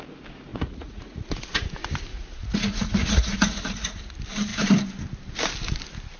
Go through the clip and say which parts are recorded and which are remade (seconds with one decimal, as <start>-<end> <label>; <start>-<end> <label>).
0.0-0.5 recorded; 0.5-1.7 remade; 1.7-2.1 recorded; 2.1-4.0 remade; 4.0-6.2 recorded